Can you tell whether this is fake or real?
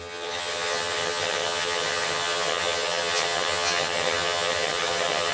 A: fake